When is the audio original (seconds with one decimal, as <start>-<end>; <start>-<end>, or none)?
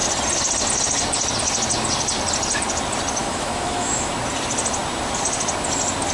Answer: 0.0-3.2; 4.1-6.1